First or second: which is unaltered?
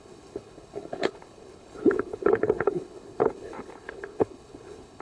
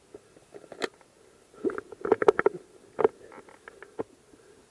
second